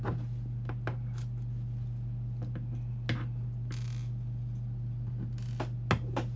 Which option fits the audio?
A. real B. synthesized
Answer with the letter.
A